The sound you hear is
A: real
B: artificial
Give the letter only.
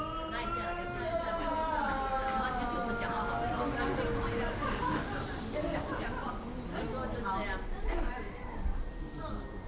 A